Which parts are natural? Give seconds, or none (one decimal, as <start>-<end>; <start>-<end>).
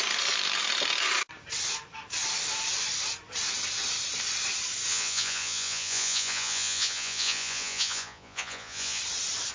0.0-4.9; 9.0-9.5